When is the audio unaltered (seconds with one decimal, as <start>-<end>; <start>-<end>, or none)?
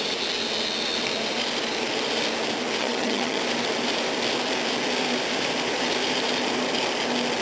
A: 0.0-2.8; 3.4-7.4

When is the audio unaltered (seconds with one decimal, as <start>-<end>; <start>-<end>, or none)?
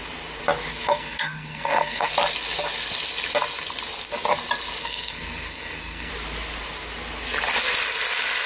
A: 0.0-0.7; 2.1-4.8; 6.1-8.5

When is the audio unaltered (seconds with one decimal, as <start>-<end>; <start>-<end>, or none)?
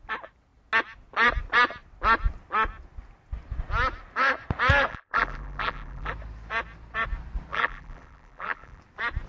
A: 0.0-4.9; 6.1-7.5; 8.8-9.3